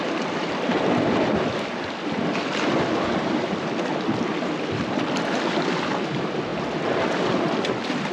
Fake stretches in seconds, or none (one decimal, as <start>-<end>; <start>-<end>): none